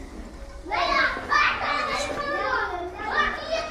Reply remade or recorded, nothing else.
recorded